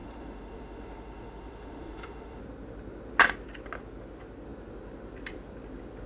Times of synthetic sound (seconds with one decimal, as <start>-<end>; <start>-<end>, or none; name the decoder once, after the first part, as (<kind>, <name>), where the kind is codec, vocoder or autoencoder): 0.0-2.4 (autoencoder, DAC-VAE)